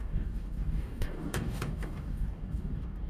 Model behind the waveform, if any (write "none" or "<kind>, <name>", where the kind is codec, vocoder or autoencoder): codec, DAC